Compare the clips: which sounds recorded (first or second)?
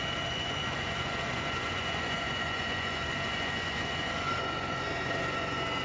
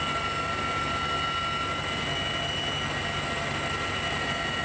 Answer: second